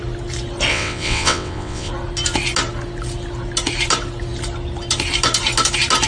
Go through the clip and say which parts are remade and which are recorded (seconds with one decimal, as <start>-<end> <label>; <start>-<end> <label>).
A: 0.0-0.7 recorded; 0.7-1.9 remade; 1.9-6.1 recorded